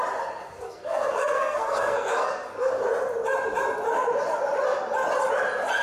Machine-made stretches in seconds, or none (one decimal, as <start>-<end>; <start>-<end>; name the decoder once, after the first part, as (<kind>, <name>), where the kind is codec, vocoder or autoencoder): 0.4-2.7 (codec, SNAC)